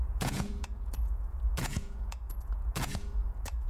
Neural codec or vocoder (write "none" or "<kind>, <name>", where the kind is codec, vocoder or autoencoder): vocoder, Vocos